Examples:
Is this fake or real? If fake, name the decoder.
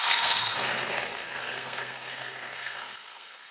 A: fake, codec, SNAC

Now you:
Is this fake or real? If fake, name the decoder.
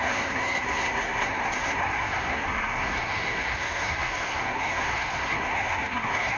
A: fake, codec, SNAC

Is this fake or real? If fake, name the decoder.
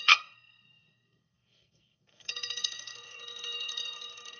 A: fake, codec, SNAC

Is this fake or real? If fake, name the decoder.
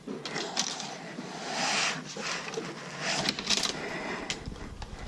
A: real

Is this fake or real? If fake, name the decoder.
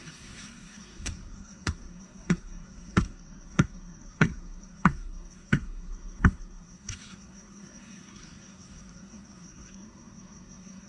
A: fake, codec, SNAC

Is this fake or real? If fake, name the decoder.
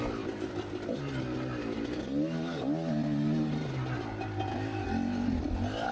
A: real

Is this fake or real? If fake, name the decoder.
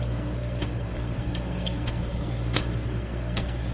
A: fake, codec, SNAC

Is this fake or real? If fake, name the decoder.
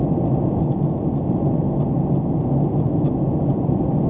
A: real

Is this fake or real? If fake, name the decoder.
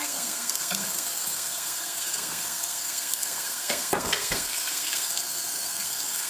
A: fake, codec, SNAC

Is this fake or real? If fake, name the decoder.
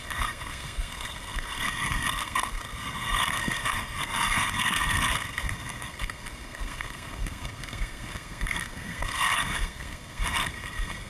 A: fake, codec, SNAC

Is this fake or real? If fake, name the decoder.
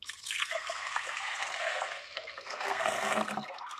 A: fake, codec, SNAC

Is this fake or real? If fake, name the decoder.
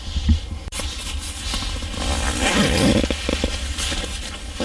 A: real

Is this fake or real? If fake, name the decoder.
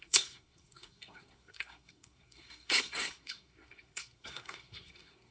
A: fake, codec, SNAC